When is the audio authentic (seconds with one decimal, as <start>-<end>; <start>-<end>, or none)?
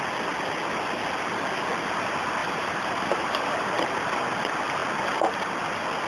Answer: 0.0-2.4; 4.0-6.1